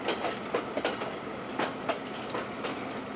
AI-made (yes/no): no